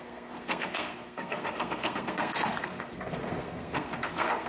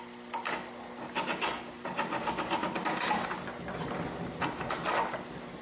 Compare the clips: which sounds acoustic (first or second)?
second